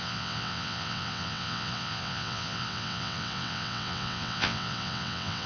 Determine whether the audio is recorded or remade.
remade